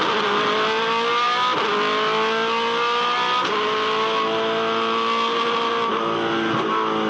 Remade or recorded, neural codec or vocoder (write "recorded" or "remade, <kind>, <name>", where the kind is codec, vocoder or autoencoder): recorded